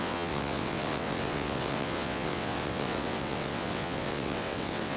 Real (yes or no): no